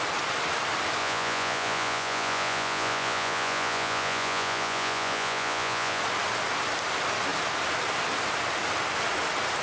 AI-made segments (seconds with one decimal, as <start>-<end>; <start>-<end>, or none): 1.0-6.0